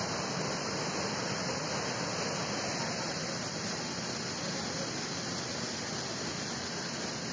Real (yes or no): yes